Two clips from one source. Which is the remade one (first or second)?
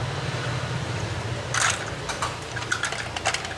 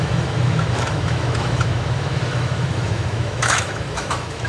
second